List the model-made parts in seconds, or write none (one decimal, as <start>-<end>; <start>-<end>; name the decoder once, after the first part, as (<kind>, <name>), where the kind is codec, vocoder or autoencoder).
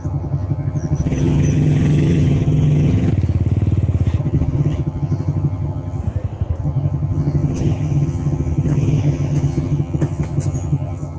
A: 0.0-3.1 (vocoder, HiFi-GAN); 4.2-6.0; 6.6-11.2